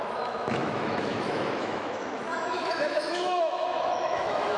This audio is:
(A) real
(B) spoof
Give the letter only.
B